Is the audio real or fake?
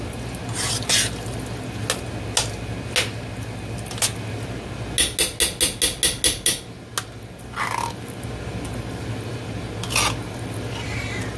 real